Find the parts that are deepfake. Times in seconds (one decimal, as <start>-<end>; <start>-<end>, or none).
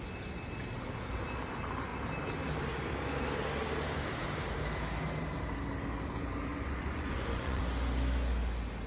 6.5-7.6